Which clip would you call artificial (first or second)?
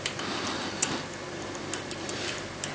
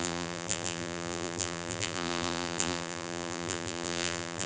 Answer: second